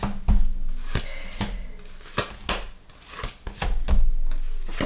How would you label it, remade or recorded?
recorded